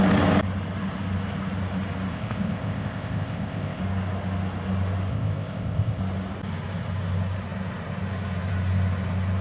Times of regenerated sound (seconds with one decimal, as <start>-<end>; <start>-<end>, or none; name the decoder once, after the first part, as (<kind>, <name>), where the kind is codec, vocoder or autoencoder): 2.1-3.8 (codec, ZipCodec); 5.1-6.0